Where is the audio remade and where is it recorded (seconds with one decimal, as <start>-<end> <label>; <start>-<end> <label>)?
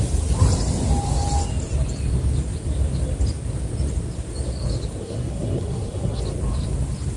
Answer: 0.0-5.0 recorded; 5.0-6.2 remade; 6.2-7.2 recorded